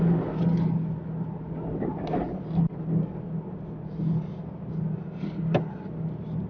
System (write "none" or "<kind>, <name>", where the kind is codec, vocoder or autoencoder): none